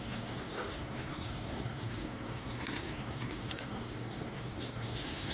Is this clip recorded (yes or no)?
no